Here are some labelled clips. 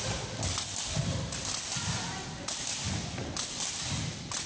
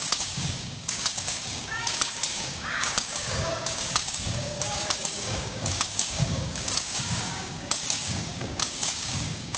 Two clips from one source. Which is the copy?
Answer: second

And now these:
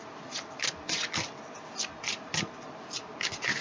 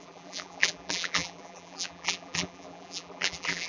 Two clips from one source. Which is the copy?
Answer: second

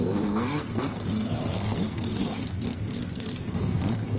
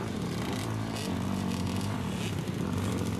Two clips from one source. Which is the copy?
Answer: first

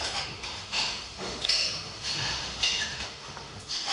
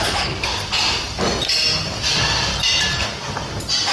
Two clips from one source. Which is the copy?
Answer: first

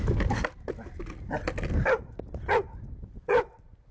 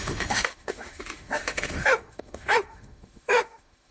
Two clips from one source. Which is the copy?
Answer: second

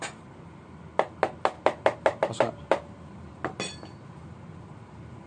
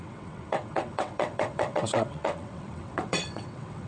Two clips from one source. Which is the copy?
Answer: second